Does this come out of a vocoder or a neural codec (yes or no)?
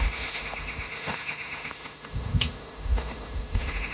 yes